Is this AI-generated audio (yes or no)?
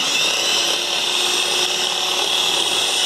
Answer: no